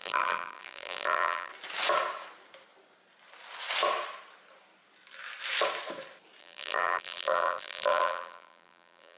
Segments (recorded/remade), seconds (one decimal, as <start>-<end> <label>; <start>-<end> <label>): 0.0-1.5 remade; 1.5-6.4 recorded; 6.4-9.2 remade